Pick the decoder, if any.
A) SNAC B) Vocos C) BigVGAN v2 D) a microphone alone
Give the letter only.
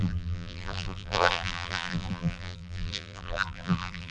C